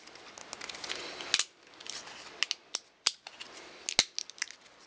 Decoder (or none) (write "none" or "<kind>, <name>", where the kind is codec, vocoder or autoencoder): none